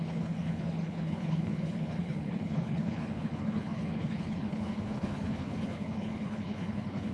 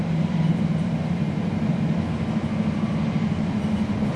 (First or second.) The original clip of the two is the second